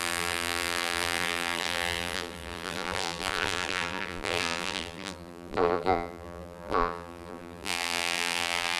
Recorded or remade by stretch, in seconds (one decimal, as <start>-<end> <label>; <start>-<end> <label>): 0.0-8.8 remade